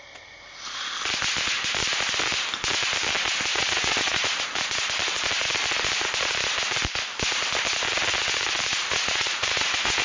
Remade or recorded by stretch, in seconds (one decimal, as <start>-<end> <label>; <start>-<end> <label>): 0.0-3.5 recorded; 3.5-4.4 remade; 4.4-8.7 recorded; 8.7-10.0 remade